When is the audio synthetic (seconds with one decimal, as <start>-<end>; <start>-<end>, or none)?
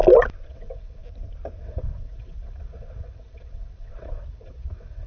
0.5-1.0; 1.6-5.1